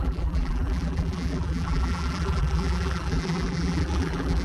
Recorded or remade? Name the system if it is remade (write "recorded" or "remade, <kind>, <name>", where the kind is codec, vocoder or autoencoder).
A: remade, vocoder, BigVGAN v2